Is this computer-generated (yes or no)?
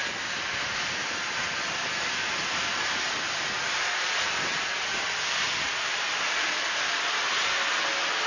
no